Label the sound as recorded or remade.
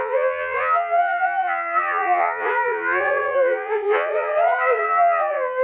remade